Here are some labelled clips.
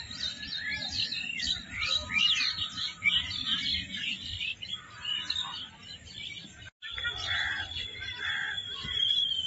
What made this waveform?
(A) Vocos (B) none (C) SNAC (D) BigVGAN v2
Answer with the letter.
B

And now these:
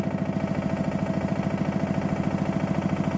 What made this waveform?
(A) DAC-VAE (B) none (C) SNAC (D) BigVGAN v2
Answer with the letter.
B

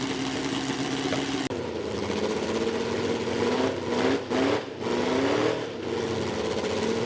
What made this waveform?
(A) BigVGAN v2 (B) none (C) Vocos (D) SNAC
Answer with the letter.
B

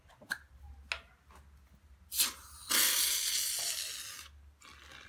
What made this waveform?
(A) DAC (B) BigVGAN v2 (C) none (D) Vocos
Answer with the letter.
C